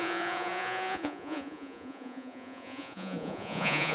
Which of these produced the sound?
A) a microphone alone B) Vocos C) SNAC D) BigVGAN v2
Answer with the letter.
B